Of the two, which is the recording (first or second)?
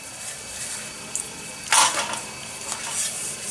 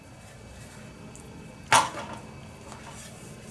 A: second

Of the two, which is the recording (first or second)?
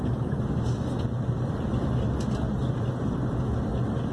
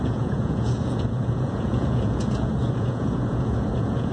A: first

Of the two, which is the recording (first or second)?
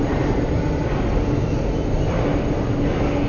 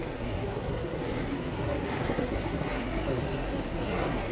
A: first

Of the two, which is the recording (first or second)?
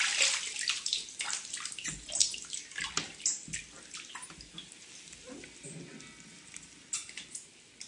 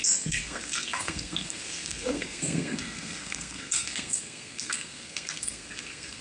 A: first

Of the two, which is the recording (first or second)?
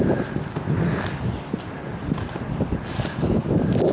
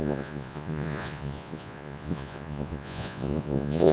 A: first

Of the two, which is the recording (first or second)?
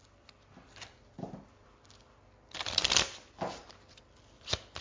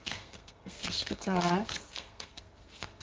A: first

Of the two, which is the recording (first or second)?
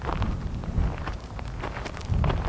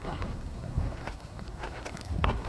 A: first